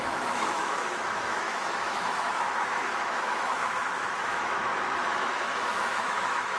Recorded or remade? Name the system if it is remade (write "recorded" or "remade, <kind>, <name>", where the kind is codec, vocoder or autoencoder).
remade, autoencoder, DAC-VAE